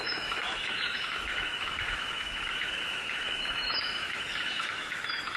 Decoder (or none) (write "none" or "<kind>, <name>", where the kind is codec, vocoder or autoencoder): autoencoder, DAC-VAE